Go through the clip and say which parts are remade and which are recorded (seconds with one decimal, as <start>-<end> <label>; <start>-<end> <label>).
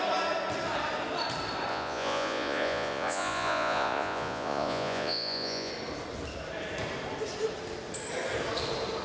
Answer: 0.0-1.7 recorded; 1.7-5.7 remade; 5.7-9.0 recorded